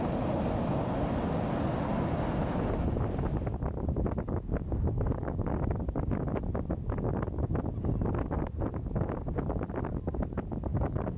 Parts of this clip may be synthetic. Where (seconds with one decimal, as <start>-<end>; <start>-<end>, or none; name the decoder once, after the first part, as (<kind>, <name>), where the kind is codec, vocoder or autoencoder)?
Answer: 10.7-11.2 (autoencoder, DAC-VAE)